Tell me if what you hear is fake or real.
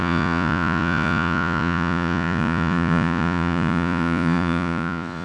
fake